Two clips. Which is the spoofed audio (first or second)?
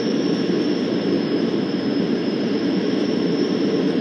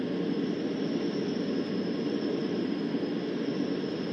first